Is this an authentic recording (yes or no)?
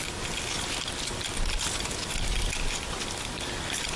yes